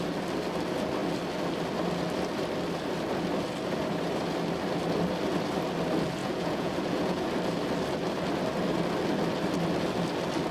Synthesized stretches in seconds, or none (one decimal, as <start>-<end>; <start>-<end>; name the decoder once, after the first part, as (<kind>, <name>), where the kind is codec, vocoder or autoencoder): 6.2-7.3 (vocoder, Vocos)